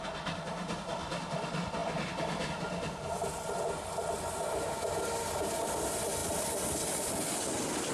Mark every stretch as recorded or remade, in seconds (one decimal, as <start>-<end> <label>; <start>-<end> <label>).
0.0-6.2 recorded; 6.2-7.2 remade; 7.2-7.9 recorded